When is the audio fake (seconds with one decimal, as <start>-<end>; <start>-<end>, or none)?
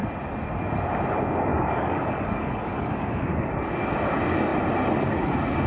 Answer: 1.5-3.5